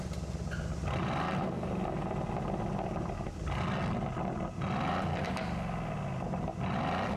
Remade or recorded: recorded